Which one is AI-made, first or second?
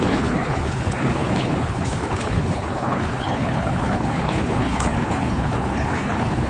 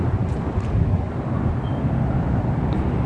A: first